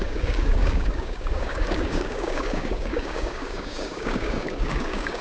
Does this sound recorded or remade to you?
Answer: remade